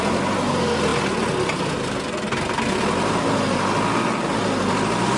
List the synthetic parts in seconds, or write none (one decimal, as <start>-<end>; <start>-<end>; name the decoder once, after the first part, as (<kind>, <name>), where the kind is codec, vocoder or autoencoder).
none